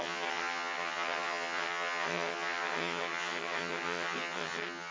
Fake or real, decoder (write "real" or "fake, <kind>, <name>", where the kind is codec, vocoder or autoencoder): fake, vocoder, HiFi-GAN